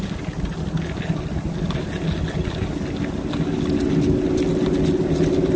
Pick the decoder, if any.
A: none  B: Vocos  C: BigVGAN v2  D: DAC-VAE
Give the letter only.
A